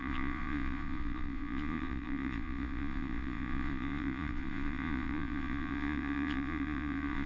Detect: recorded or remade remade